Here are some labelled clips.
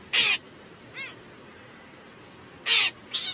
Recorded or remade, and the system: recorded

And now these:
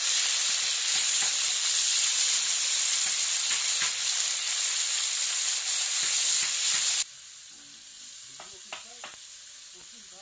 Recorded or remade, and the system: recorded